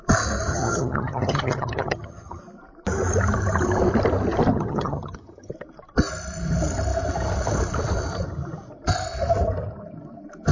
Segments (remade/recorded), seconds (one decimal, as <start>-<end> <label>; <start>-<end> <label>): 0.0-0.5 recorded; 0.5-2.4 remade; 2.4-4.5 recorded; 4.5-5.5 remade; 5.5-10.5 recorded

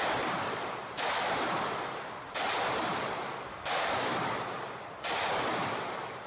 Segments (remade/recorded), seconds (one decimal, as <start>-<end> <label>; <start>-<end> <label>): 0.0-3.5 recorded; 3.5-4.1 remade; 4.1-6.3 recorded

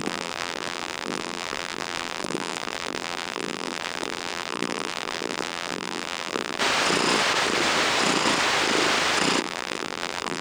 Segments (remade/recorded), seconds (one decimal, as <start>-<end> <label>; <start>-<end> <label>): 0.0-6.6 remade; 6.6-9.4 recorded; 9.4-10.4 remade